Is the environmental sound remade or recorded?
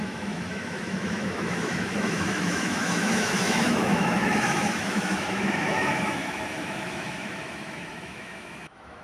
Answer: remade